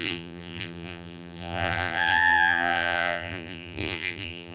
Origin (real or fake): fake